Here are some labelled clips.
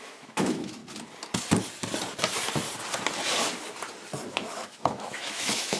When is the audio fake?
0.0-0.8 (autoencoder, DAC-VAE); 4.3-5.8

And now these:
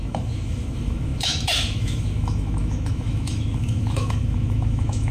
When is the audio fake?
0.0-5.1 (autoencoder, DAC-VAE)

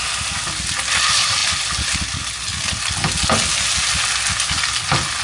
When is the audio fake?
none

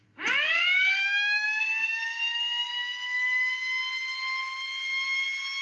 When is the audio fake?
1.0-1.6 (autoencoder, DAC-VAE)

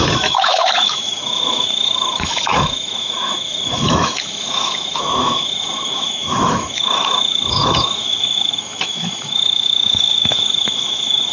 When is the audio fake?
0.0-11.3 (autoencoder, DAC-VAE)

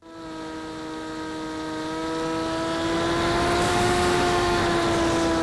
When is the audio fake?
3.7-4.6 (autoencoder, DAC-VAE)